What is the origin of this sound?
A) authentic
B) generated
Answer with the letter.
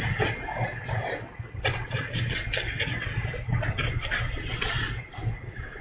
A